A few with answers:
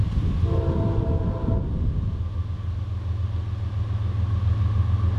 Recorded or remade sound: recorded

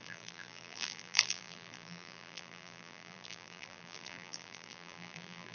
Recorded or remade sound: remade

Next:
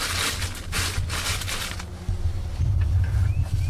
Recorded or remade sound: recorded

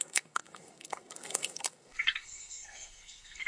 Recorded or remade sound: remade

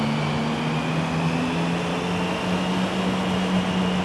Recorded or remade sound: recorded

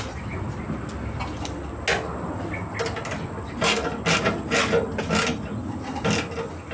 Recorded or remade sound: recorded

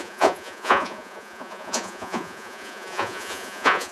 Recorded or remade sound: remade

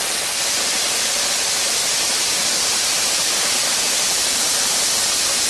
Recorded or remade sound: remade